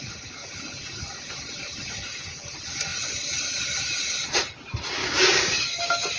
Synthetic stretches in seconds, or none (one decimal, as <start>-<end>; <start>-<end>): 5.0-6.2